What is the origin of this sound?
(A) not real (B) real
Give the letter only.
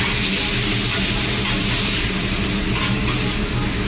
B